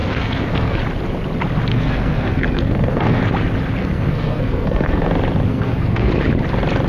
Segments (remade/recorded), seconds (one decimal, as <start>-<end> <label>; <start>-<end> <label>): 0.0-0.8 remade; 0.8-1.7 recorded; 1.7-3.2 remade; 3.2-3.8 recorded; 3.8-5.1 remade; 5.1-5.5 recorded; 5.5-6.1 remade; 6.1-6.9 recorded

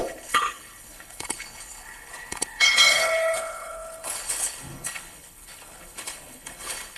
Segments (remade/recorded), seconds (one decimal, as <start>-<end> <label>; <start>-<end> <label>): 0.0-7.0 remade

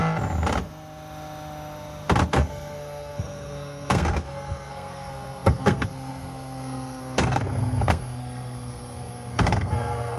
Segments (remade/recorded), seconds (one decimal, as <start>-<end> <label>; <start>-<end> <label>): 0.0-2.3 recorded; 2.3-10.2 remade